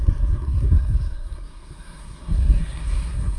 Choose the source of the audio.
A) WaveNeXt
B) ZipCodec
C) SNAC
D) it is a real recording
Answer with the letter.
C